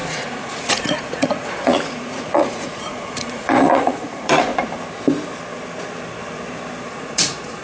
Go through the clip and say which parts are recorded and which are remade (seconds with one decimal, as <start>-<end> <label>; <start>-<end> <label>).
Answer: 0.0-4.5 remade; 4.5-6.9 recorded; 6.9-7.6 remade